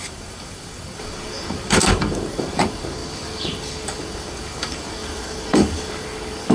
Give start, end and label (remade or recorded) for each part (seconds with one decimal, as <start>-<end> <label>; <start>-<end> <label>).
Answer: 0.0-6.5 remade